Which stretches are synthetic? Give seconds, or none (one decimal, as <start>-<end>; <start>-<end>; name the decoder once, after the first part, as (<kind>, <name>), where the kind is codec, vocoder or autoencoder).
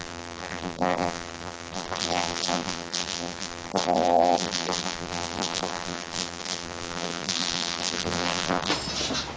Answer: 0.0-8.7 (vocoder, BigVGAN v2)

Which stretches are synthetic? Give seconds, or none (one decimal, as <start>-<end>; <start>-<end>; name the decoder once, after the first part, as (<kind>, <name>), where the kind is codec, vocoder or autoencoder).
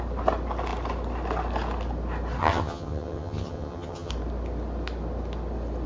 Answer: 2.4-4.1 (vocoder, HiFi-GAN)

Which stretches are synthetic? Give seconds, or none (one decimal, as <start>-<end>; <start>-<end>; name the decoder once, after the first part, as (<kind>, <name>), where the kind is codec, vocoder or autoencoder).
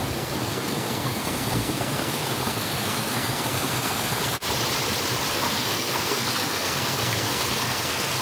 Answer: 0.0-4.4 (codec, SNAC); 5.3-8.2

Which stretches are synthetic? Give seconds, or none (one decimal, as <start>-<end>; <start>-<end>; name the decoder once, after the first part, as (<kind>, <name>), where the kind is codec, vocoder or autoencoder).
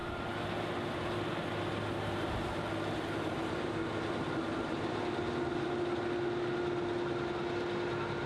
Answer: none